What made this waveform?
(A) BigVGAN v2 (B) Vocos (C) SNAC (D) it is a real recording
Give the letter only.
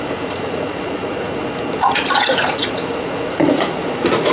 B